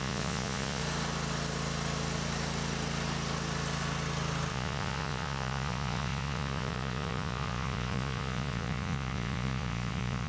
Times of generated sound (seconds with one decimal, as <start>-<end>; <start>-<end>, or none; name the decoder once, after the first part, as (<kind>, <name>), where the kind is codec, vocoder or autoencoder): 0.0-0.8 (vocoder, Vocos); 4.5-10.3